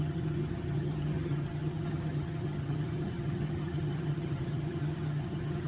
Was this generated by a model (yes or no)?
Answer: yes